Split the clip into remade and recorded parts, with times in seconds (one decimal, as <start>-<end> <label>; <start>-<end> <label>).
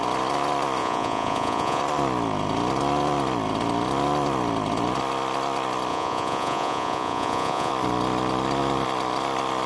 0.0-0.8 recorded; 0.8-1.8 remade; 1.8-5.9 recorded; 5.9-7.7 remade; 7.7-9.7 recorded